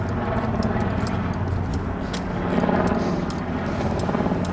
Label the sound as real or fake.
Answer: real